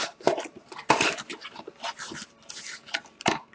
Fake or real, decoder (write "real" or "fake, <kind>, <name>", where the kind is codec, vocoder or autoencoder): fake, vocoder, BigVGAN v2